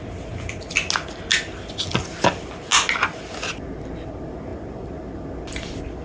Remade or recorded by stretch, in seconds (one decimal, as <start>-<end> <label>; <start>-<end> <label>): 0.0-6.0 recorded